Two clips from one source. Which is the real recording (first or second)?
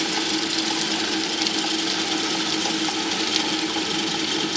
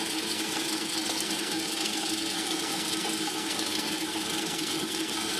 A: first